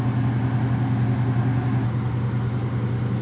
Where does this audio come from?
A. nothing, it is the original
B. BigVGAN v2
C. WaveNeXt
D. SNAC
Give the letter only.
A